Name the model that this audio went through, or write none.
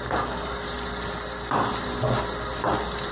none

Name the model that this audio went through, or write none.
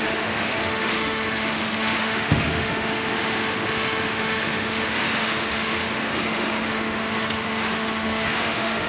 autoencoder, DAC-VAE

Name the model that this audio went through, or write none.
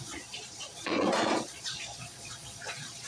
vocoder, Vocos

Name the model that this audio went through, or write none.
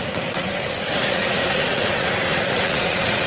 vocoder, Vocos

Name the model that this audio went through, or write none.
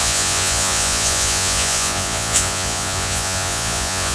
vocoder, Vocos